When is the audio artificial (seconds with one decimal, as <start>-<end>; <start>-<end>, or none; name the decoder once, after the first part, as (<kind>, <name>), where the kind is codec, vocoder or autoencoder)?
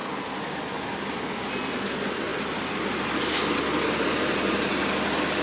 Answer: none